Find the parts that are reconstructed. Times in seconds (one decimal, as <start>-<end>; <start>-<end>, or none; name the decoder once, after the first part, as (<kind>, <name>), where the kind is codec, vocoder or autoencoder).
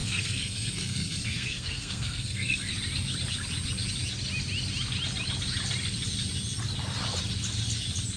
0.0-2.7 (codec, SNAC)